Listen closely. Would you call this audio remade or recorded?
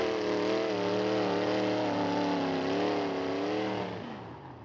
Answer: recorded